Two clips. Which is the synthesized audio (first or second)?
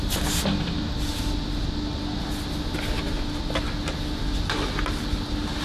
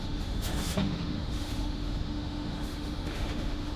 second